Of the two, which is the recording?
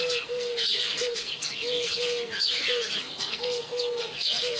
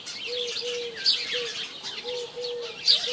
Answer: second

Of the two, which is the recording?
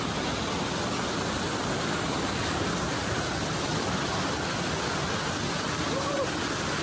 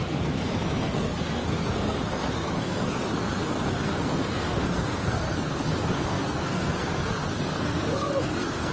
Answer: first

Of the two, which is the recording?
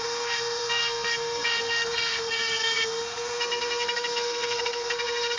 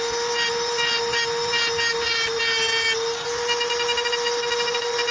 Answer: second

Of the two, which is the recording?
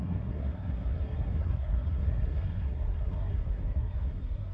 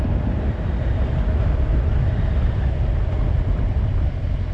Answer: second